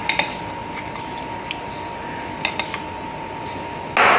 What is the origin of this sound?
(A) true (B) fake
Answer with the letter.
A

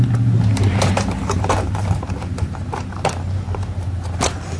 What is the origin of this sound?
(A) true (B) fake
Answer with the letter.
B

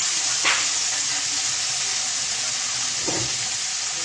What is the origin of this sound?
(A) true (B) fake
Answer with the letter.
A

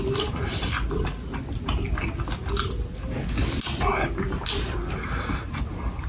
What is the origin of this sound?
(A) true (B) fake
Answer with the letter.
A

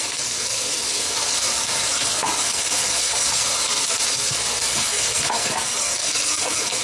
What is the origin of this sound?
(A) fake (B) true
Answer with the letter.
A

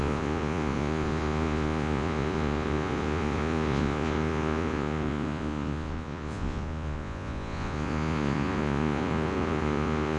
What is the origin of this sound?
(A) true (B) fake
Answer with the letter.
B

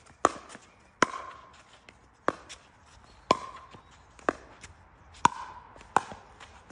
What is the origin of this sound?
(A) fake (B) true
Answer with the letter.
B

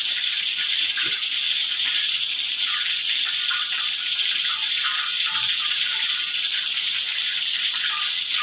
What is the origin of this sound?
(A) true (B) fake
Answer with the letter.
A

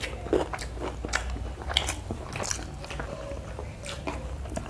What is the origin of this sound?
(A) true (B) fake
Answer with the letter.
A